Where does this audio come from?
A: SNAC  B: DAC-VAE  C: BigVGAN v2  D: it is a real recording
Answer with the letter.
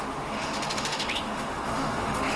B